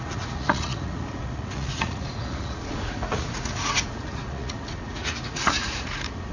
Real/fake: fake